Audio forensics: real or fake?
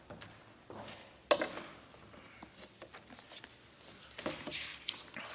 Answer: real